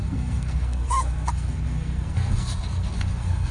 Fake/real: fake